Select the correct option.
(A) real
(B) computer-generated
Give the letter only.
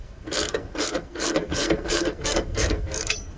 B